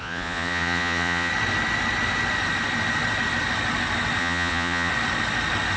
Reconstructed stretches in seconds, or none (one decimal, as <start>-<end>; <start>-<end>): 0.0-1.3; 4.2-4.9